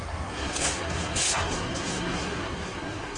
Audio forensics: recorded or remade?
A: remade